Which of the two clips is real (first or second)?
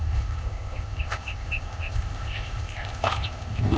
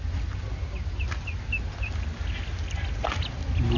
second